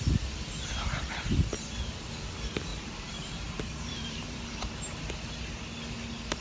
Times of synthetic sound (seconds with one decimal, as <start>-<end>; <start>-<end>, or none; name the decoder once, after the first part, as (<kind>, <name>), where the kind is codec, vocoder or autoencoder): 2.7-4.8 (vocoder, BigVGAN v2)